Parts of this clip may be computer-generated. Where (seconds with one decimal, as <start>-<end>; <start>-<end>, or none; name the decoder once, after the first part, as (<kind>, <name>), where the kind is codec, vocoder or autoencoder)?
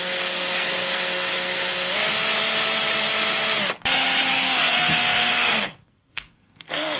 0.0-2.0 (codec, SNAC); 4.3-7.0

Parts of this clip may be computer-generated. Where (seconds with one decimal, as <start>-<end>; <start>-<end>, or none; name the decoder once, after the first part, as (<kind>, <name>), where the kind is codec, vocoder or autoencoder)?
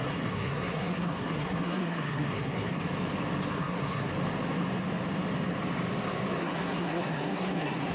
0.0-2.8 (codec, SNAC); 3.5-4.1; 6.4-7.9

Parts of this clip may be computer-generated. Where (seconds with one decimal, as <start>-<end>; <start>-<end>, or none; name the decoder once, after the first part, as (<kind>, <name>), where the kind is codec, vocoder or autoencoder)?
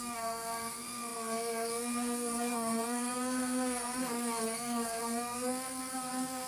0.0-6.5 (codec, SNAC)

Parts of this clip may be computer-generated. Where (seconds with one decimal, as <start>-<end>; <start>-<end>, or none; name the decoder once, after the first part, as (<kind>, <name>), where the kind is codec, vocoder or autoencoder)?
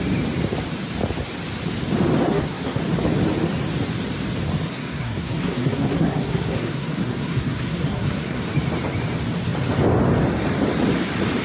2.2-2.8 (codec, SNAC); 4.7-8.4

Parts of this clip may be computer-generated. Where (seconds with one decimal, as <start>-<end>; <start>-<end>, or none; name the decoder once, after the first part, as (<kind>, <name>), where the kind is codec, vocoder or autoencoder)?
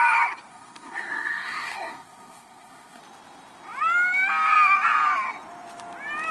0.5-3.0 (codec, SNAC)